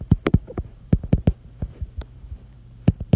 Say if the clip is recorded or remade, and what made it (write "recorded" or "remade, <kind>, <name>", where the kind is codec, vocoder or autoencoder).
remade, vocoder, BigVGAN v2